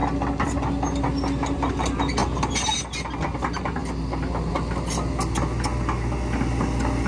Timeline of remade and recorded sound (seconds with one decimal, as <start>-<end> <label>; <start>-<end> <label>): 0.0-7.1 recorded

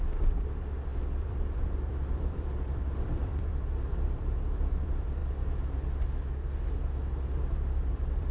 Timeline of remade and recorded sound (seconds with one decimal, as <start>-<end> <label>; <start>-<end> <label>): 0.0-5.2 remade; 5.2-7.9 recorded; 7.9-8.3 remade

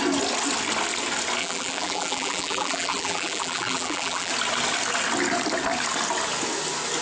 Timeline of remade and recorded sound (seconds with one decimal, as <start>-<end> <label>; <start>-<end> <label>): 0.0-1.4 recorded; 1.4-4.3 remade; 4.3-7.0 recorded

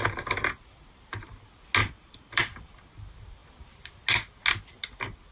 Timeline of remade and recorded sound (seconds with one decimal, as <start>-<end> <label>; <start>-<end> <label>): 0.0-1.8 recorded; 1.8-2.7 remade; 2.7-5.3 recorded

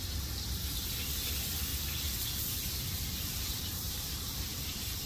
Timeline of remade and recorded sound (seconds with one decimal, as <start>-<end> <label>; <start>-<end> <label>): 0.0-1.7 recorded; 1.7-5.1 remade

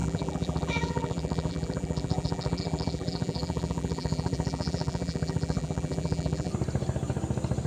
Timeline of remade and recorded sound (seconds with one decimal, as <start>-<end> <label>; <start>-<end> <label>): 0.0-6.5 remade; 6.5-7.7 recorded

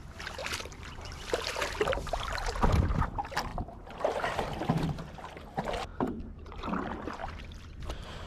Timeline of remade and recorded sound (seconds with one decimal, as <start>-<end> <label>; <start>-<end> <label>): 0.0-3.5 recorded; 3.5-4.6 remade; 4.6-8.3 recorded